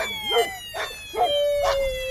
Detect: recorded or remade recorded